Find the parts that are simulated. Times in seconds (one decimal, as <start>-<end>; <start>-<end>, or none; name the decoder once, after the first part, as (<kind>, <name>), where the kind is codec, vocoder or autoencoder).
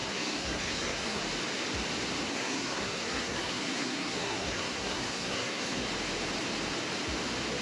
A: 0.0-1.2 (codec, SNAC); 2.3-5.9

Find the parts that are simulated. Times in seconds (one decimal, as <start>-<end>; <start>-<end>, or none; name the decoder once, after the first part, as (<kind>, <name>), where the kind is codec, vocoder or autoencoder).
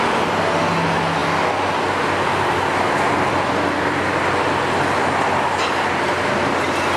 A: none